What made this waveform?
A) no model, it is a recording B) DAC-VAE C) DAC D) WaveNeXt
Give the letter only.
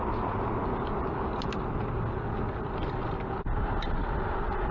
A